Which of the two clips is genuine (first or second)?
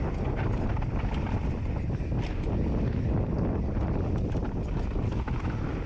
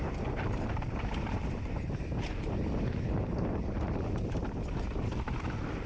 first